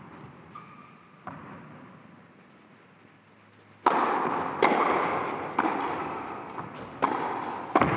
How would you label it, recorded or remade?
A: recorded